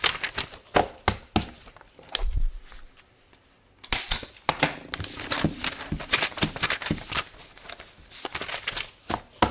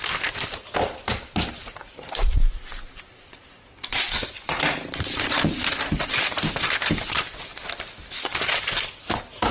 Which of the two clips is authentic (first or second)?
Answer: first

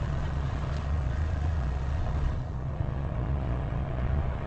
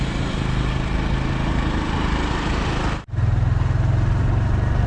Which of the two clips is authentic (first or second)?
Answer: second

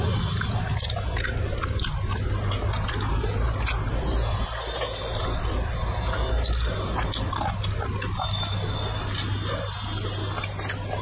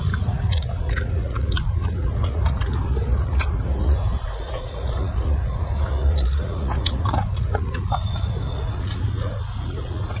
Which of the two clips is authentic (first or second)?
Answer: first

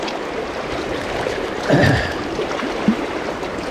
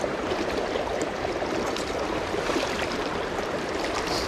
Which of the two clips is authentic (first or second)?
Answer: first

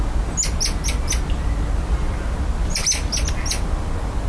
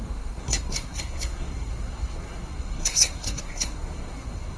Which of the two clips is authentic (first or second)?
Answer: first